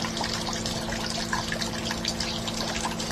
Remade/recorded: recorded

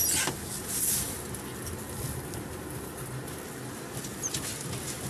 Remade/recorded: recorded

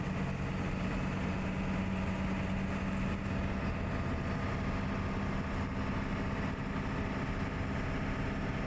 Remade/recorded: recorded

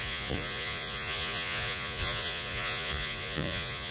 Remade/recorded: remade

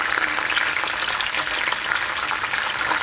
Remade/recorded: recorded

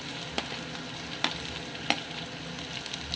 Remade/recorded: recorded